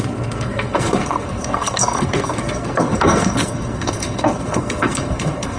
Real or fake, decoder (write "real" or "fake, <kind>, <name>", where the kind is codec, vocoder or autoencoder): fake, codec, SNAC